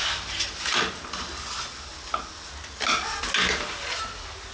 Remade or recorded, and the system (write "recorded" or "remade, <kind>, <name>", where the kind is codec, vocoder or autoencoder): recorded